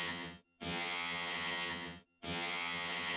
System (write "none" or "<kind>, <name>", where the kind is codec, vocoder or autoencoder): vocoder, HiFi-GAN